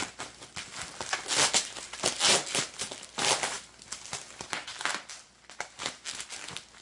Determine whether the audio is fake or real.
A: real